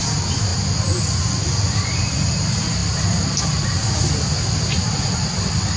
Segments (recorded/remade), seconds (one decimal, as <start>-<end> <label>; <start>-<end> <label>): 0.0-5.8 recorded